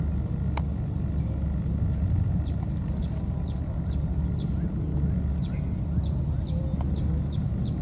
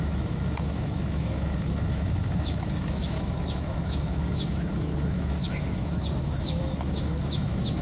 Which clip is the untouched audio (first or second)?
first